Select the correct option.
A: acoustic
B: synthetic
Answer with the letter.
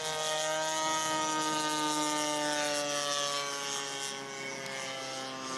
A